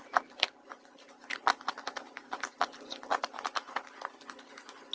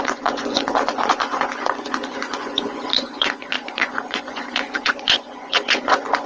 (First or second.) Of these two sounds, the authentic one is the first